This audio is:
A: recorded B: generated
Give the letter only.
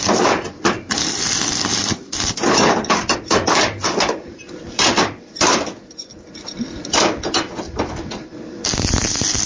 B